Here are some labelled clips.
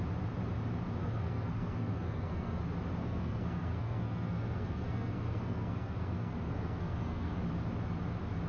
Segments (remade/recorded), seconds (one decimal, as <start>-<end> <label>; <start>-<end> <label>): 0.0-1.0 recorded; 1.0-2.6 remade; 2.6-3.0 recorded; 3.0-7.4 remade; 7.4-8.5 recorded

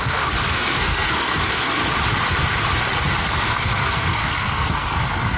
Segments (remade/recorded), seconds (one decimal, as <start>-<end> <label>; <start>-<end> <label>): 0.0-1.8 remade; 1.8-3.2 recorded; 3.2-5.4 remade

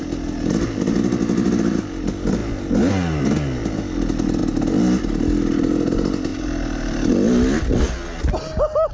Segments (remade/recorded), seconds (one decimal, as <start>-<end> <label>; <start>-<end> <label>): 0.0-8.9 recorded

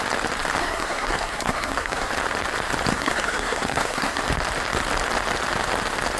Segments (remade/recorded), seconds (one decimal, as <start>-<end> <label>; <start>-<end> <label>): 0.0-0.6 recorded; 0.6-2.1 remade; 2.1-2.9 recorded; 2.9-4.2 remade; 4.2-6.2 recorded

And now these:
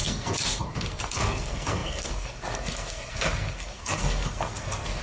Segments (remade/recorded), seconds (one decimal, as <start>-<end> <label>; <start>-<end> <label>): 0.0-5.0 remade

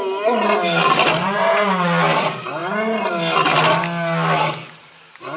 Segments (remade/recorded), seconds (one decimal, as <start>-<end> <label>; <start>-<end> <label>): 0.0-5.4 recorded

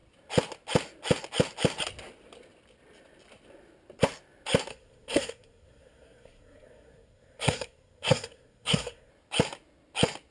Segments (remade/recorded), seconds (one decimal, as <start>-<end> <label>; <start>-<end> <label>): 0.0-4.7 recorded; 4.7-9.1 remade; 9.1-10.3 recorded